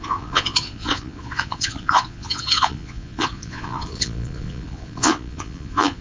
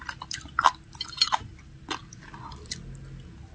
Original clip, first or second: second